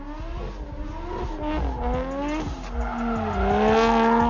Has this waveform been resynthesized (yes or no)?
no